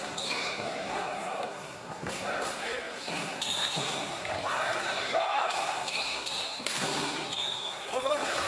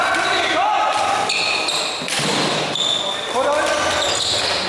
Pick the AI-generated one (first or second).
first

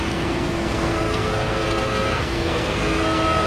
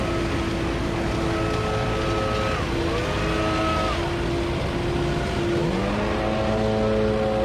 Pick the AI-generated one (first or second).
first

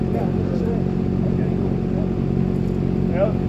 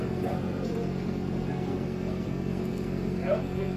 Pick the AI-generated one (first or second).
second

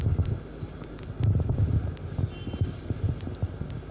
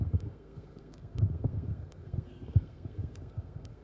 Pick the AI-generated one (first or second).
second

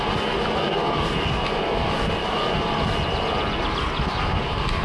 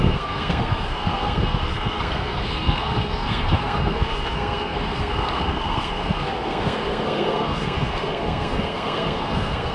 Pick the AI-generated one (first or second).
second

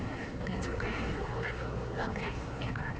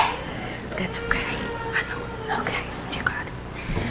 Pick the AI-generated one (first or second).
first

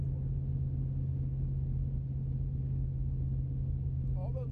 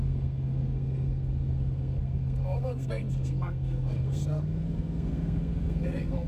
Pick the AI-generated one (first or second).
second